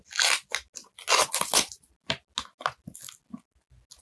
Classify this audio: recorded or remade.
recorded